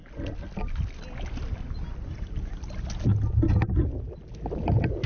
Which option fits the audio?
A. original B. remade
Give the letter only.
A